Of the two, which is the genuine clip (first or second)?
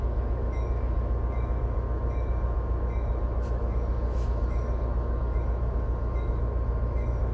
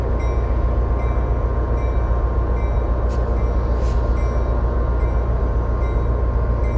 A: second